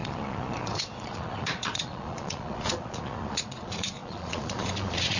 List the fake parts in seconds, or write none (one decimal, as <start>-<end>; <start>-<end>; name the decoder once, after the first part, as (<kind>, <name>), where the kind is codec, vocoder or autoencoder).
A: 0.0-5.2 (vocoder, Vocos)